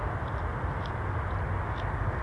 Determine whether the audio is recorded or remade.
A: recorded